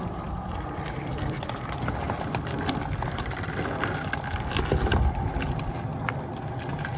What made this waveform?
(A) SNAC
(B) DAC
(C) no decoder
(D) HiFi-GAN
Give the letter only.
C